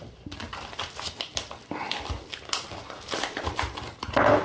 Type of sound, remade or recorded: remade